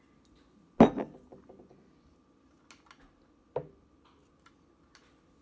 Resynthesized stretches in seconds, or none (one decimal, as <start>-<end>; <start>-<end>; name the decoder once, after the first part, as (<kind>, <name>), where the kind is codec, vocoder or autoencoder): none